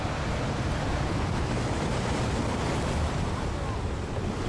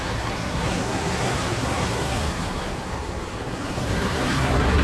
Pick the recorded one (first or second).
first